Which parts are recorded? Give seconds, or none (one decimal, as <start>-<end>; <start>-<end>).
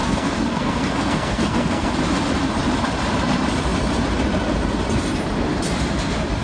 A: 1.9-6.4